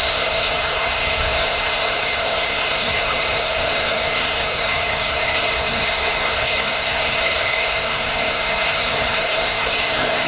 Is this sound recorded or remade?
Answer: remade